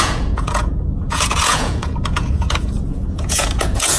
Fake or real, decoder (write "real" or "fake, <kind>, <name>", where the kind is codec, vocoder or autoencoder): fake, vocoder, Vocos